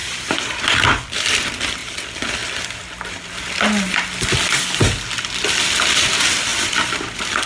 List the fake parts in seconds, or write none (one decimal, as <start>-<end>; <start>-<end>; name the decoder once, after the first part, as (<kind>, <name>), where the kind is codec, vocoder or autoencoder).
0.0-0.6 (vocoder, BigVGAN v2); 6.5-7.1